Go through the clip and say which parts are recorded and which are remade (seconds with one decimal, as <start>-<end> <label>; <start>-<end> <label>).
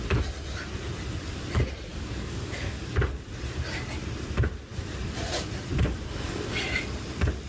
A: 0.0-1.9 recorded; 1.9-2.9 remade; 2.9-7.5 recorded